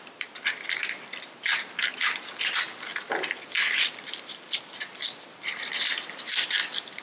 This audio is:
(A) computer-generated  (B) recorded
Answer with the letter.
B